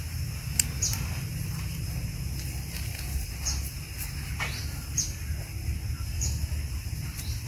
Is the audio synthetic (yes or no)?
no